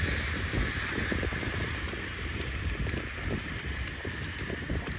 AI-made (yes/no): no